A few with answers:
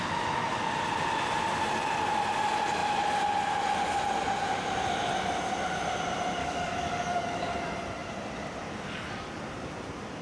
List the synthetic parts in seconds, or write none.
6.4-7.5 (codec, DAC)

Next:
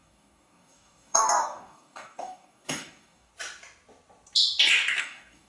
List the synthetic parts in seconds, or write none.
0.0-3.3 (codec, DAC); 5.0-5.5

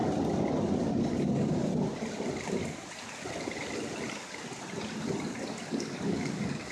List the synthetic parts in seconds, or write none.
1.0-1.7 (codec, DAC); 5.6-6.7

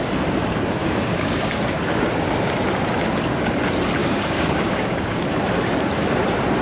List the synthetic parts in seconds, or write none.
0.8-2.1 (codec, DAC); 4.0-5.2

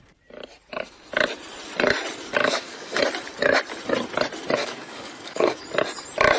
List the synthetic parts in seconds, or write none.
2.4-3.0 (codec, DAC); 4.6-5.6

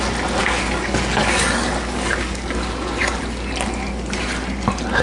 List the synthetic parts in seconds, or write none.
0.4-3.2 (codec, DAC)